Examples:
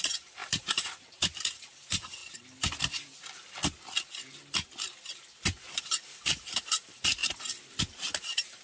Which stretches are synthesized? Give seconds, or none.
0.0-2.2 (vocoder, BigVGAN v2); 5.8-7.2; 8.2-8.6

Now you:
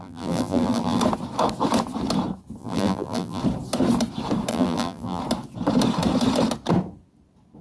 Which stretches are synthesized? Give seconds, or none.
0.0-1.0 (vocoder, BigVGAN v2); 2.6-3.4; 4.5-5.2

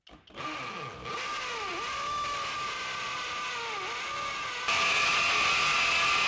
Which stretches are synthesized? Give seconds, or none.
none

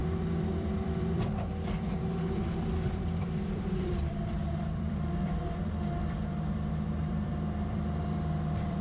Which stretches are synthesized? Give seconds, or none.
0.0-8.8 (vocoder, BigVGAN v2)

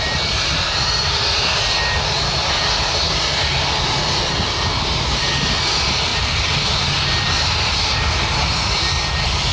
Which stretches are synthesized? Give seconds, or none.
none

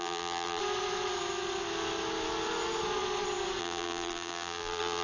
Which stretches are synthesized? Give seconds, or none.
0.0-0.6 (vocoder, BigVGAN v2); 3.6-5.0

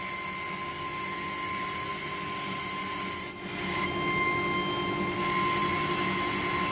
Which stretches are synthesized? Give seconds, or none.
none

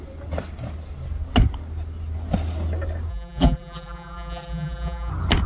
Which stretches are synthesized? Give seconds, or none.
3.1-5.1 (vocoder, BigVGAN v2)